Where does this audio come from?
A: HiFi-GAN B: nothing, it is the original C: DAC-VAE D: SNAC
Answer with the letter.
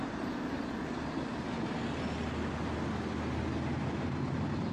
B